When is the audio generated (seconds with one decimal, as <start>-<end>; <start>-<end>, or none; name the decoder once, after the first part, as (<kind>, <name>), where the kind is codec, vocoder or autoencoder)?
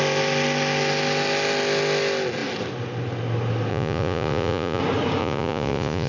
3.7-4.8 (vocoder, Vocos); 5.2-6.1